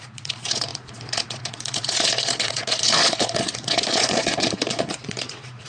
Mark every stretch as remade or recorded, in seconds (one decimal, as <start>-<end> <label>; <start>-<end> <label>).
0.0-5.7 remade